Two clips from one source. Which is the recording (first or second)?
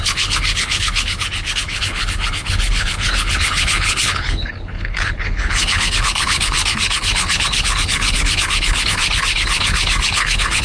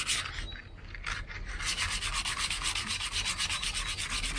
second